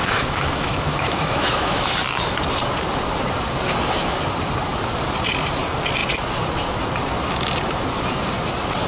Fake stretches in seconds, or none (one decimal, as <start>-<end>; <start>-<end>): 0.0-1.9